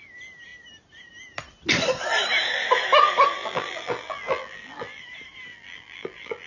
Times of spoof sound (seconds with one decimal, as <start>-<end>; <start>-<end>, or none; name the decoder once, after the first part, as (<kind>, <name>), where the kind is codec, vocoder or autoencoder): 3.4-5.0 (vocoder, BigVGAN v2); 5.5-6.5